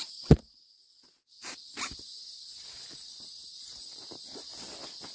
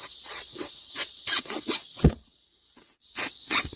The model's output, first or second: second